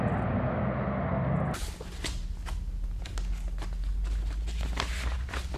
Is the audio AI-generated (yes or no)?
no